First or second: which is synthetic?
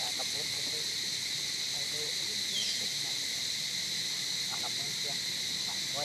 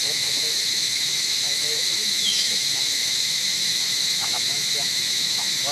second